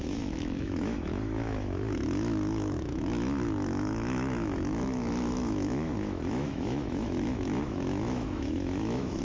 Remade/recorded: remade